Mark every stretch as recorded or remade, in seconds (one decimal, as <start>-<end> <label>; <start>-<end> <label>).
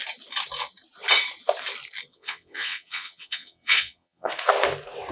0.0-2.1 recorded; 2.1-4.3 remade; 4.3-5.1 recorded